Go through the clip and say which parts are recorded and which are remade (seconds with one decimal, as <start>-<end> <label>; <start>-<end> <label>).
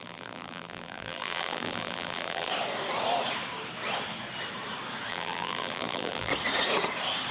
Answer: 0.0-2.5 remade; 2.5-5.1 recorded; 5.1-6.3 remade; 6.3-7.3 recorded